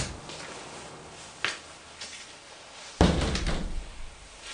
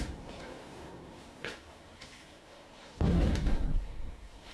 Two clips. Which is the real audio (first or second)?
first